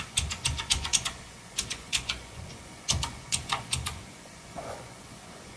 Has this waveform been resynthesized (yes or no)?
yes